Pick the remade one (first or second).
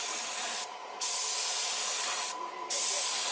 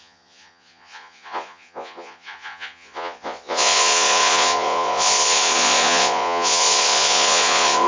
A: second